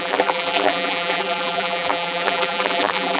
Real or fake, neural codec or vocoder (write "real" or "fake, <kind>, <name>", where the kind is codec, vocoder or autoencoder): fake, vocoder, BigVGAN v2